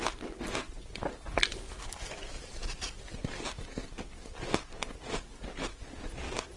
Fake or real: real